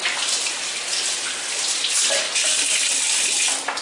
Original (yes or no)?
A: yes